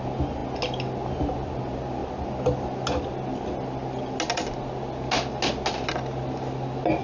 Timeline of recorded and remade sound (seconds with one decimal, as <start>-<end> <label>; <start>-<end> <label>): 0.0-7.0 recorded